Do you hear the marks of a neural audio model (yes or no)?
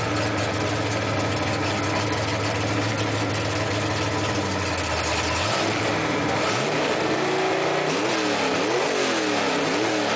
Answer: no